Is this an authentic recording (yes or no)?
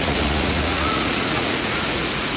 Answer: no